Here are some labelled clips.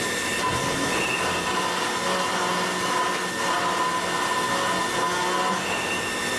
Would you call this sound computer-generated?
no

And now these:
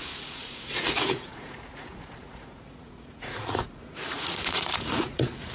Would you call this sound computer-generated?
yes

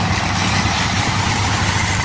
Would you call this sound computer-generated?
no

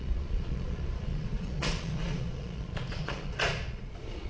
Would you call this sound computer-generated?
yes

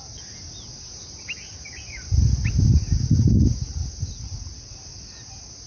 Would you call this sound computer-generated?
no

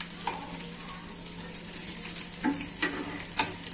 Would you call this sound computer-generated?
no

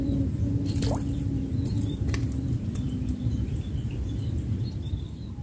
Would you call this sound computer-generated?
yes